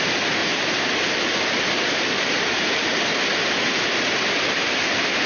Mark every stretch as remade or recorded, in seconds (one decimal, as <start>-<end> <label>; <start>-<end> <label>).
0.0-0.4 recorded; 0.4-3.0 remade; 3.0-5.3 recorded